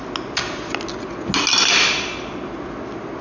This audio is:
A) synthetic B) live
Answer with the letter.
B